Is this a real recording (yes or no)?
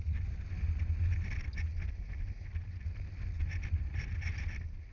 yes